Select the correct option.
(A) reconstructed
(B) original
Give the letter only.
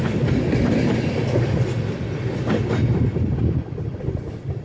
B